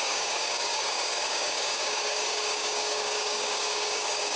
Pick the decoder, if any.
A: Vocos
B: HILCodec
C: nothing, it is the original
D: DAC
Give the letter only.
D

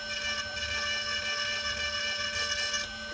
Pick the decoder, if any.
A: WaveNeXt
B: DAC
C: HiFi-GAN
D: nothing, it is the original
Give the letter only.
D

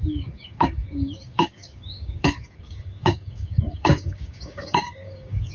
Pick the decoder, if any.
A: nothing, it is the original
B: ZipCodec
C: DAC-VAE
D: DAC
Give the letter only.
D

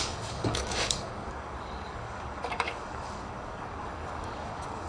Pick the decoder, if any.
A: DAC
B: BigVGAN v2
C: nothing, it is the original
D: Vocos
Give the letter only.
A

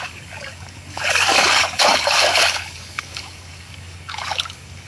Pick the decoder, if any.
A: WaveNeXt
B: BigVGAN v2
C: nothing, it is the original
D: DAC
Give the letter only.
D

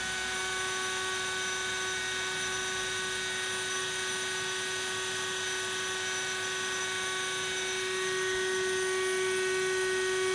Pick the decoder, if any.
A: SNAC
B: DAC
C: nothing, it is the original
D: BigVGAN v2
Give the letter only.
C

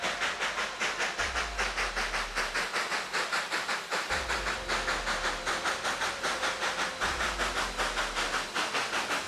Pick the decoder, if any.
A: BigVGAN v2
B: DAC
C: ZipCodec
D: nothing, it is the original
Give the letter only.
D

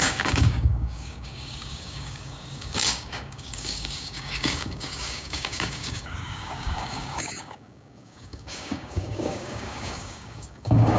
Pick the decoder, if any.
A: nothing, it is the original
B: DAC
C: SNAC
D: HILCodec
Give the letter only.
B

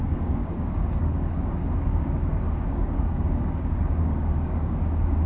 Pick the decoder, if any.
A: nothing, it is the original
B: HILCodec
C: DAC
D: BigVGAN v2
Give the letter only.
C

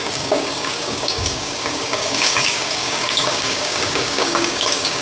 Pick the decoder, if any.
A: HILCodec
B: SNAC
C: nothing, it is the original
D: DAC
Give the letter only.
D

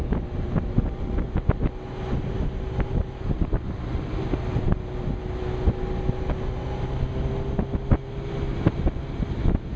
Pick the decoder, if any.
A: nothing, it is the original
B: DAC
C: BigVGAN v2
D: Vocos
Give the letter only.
A